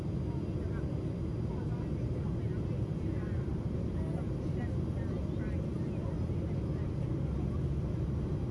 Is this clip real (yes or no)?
yes